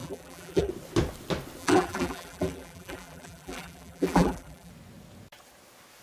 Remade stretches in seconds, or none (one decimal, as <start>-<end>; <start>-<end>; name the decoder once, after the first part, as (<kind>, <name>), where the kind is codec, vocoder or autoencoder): 0.0-0.7 (vocoder, BigVGAN v2); 1.6-4.7